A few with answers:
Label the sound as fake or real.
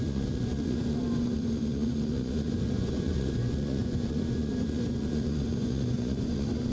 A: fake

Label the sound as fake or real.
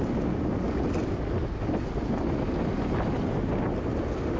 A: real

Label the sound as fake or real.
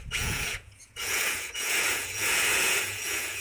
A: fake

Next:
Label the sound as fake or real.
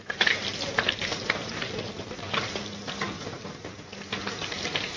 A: real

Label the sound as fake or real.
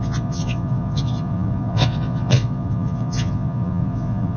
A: fake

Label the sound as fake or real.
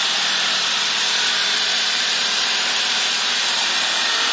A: fake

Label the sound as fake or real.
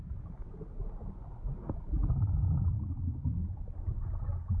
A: real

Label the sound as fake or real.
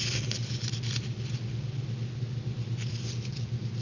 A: real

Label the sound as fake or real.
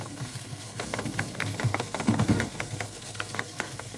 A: fake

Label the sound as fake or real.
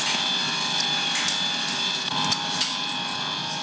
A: real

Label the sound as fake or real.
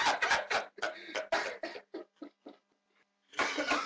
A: real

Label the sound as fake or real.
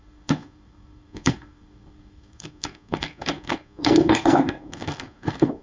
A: fake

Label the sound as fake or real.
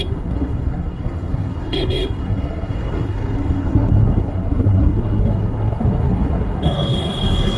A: fake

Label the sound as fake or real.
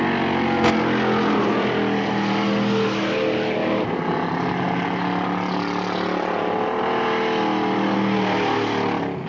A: real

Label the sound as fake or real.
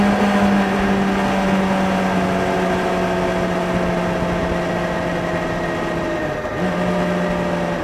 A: real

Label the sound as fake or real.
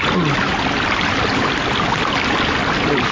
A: real